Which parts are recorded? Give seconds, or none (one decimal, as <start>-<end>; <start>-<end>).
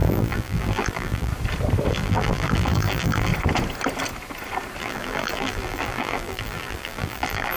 1.3-1.9; 3.3-4.8